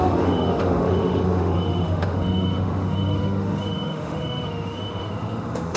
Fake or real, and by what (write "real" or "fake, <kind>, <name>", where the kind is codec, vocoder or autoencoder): fake, autoencoder, DAC-VAE